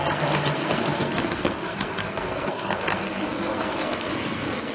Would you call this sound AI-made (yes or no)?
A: yes